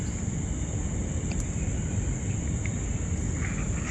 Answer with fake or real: real